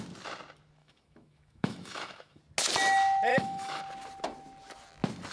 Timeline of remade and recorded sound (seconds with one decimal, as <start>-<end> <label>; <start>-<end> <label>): 0.0-0.8 recorded; 0.8-2.4 remade; 2.4-3.3 recorded; 3.3-3.8 remade; 3.8-5.3 recorded